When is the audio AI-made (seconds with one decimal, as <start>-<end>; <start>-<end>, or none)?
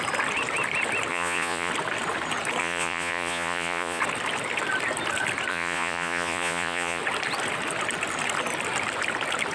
1.1-1.7; 2.6-4.0; 5.5-7.0